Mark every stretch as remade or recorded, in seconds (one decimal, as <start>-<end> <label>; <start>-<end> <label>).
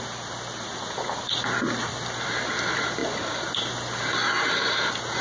0.0-0.6 recorded; 0.6-1.3 remade; 1.3-5.2 recorded